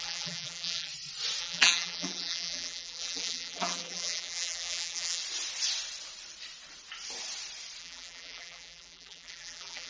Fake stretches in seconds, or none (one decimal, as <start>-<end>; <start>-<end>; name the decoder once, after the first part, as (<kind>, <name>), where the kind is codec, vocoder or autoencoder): 0.0-0.9 (vocoder, BigVGAN v2); 1.4-5.2; 7.8-9.9